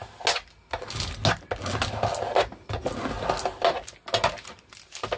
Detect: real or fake real